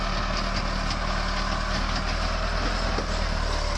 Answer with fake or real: real